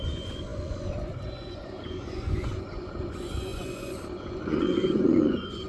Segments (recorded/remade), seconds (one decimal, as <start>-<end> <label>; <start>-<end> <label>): 0.0-5.7 remade